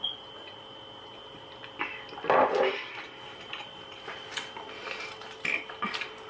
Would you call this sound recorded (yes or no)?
yes